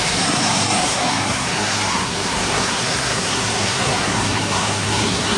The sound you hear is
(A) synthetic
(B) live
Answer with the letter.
A